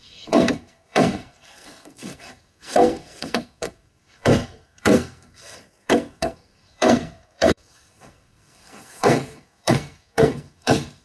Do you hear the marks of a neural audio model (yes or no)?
yes